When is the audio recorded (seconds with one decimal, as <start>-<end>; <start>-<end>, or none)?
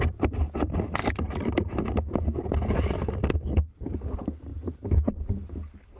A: 0.0-6.0